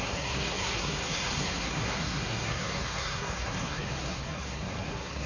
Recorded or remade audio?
remade